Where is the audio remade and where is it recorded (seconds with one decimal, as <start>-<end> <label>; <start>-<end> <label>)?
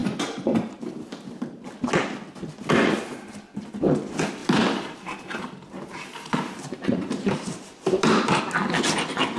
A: 0.0-1.7 remade; 1.7-4.4 recorded; 4.4-8.4 remade; 8.4-9.4 recorded